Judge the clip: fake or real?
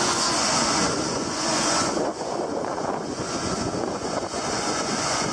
fake